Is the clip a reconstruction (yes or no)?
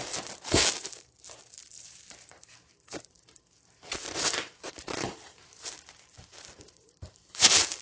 yes